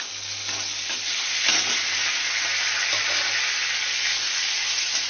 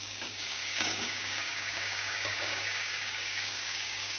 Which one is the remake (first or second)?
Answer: second